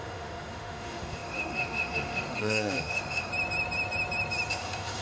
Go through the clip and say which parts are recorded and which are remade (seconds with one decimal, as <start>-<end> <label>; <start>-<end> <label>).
0.0-3.3 remade; 3.3-4.5 recorded; 4.5-5.0 remade